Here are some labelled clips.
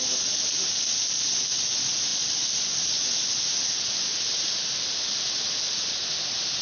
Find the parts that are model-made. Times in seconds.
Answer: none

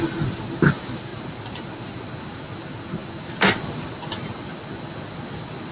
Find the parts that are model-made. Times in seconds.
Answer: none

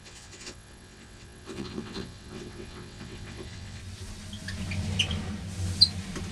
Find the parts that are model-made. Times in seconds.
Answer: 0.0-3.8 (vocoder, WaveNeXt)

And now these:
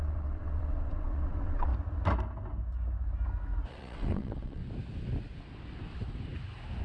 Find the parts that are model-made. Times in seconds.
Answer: 0.0-1.7 (vocoder, WaveNeXt); 3.7-4.6